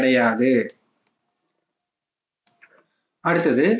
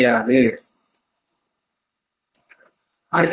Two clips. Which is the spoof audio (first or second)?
second